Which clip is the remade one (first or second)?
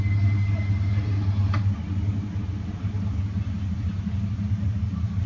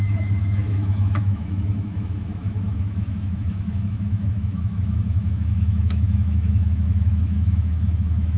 second